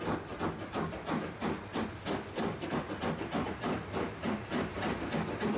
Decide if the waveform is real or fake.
real